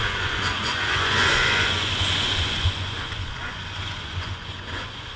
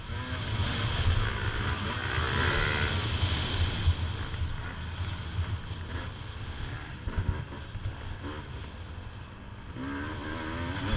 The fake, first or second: first